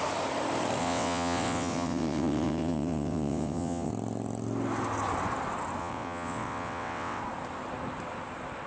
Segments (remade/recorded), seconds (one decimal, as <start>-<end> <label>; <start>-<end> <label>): 0.0-0.8 recorded; 0.8-3.9 remade; 3.9-5.8 recorded; 5.8-7.2 remade; 7.2-8.7 recorded